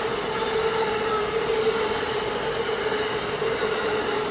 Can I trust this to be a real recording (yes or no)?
yes